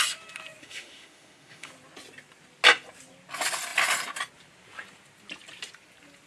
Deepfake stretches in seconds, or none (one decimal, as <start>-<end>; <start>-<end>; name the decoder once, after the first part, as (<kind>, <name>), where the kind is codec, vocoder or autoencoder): 0.6-1.7 (autoencoder, DAC-VAE)